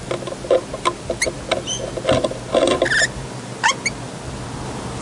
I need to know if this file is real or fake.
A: real